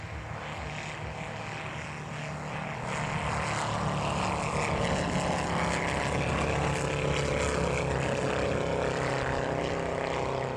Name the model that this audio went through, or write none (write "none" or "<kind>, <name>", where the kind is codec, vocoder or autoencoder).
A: none